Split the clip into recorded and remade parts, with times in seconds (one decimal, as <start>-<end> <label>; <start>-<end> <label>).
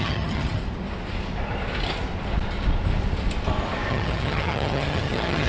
0.0-0.6 remade; 0.6-3.9 recorded; 3.9-5.5 remade